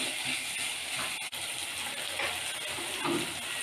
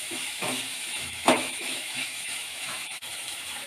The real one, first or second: first